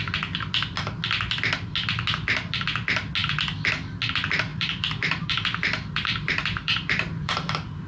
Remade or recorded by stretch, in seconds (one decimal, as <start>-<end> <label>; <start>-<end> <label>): 0.0-4.5 recorded; 4.5-7.5 remade; 7.5-7.9 recorded